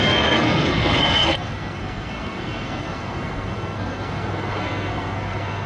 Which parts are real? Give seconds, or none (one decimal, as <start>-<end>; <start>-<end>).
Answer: none

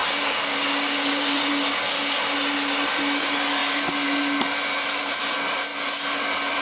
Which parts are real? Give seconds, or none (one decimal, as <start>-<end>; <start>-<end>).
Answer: 1.4-6.6

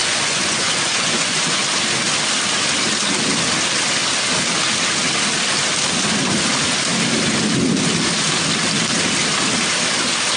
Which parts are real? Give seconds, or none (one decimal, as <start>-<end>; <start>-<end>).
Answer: 1.6-10.4

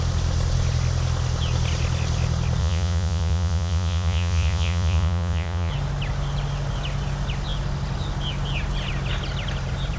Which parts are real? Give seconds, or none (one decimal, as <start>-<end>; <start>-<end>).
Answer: 0.0-2.6; 5.7-10.0

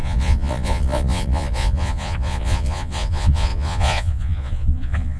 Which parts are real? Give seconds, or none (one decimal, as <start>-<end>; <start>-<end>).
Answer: none

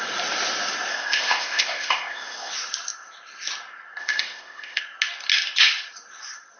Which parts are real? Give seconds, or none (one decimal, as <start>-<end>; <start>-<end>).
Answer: 0.0-0.9; 2.5-4.0; 4.8-6.6

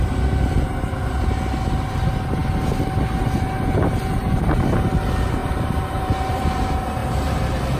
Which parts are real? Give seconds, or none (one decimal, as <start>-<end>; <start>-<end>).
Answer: 0.0-4.2; 5.0-5.4; 6.4-7.0

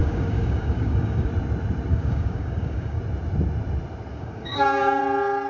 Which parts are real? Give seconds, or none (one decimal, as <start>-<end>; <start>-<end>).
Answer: 1.3-1.9; 3.0-4.1; 5.0-5.5